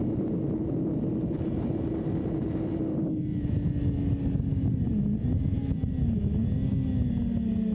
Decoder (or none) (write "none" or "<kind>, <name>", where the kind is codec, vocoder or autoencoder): none